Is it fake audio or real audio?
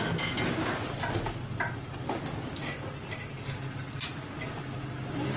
real